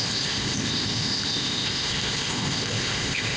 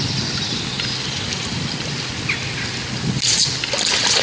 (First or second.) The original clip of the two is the second